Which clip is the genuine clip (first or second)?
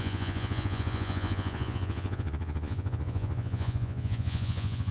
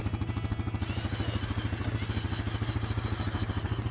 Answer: second